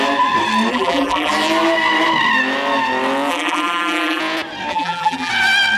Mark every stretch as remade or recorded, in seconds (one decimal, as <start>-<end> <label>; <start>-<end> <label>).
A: 0.0-0.7 recorded; 0.7-1.3 remade; 1.3-3.3 recorded; 3.3-4.2 remade; 4.2-4.7 recorded; 4.7-5.3 remade; 5.3-5.8 recorded